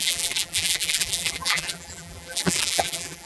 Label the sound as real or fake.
fake